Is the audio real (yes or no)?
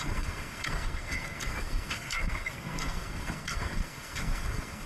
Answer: no